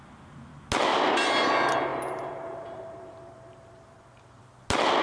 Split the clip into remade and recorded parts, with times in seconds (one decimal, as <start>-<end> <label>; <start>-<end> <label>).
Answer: 0.0-0.9 recorded; 0.9-1.5 remade; 1.5-1.9 recorded; 1.9-4.4 remade; 4.4-5.0 recorded